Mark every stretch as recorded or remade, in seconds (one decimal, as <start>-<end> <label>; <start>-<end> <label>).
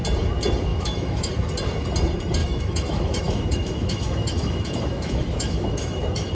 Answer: 0.0-0.7 recorded; 0.7-1.3 remade; 1.3-2.4 recorded; 2.4-6.3 remade